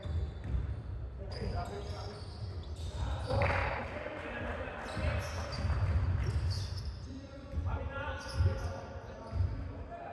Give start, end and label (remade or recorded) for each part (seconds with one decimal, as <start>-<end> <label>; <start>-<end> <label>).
0.0-10.1 recorded